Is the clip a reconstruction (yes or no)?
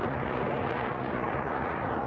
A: yes